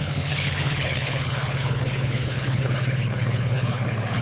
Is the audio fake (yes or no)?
yes